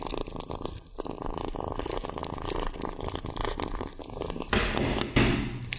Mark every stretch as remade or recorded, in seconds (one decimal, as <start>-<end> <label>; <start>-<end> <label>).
0.0-5.8 recorded